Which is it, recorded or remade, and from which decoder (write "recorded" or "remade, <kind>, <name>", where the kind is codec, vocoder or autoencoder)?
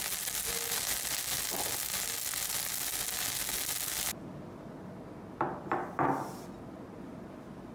recorded